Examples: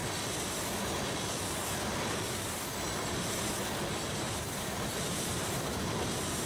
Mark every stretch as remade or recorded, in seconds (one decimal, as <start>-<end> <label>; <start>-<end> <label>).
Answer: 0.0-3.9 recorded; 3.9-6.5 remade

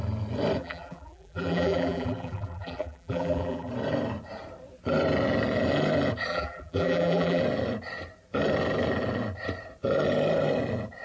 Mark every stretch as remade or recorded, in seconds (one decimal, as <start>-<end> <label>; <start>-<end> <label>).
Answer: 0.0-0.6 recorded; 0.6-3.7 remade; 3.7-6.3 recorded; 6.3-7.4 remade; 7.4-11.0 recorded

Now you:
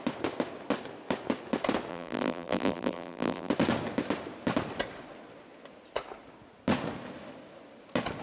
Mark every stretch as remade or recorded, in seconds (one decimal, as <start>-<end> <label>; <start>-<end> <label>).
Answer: 0.0-1.9 recorded; 1.9-3.5 remade; 3.5-8.2 recorded